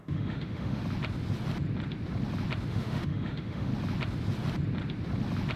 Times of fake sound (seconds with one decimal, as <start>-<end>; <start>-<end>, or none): 0.0-0.8; 2.7-3.7